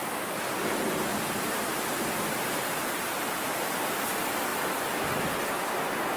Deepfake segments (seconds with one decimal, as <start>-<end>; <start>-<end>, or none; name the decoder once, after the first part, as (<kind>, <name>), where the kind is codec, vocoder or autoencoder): none